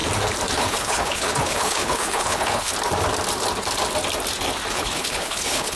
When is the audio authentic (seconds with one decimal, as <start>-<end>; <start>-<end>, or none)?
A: 0.0-0.6; 2.7-4.7